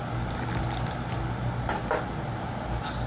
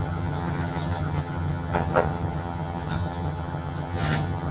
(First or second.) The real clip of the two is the first